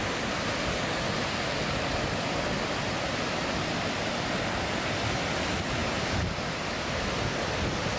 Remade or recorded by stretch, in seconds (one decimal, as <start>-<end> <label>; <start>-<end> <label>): 0.0-8.0 recorded